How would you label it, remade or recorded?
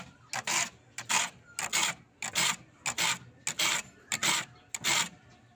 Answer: recorded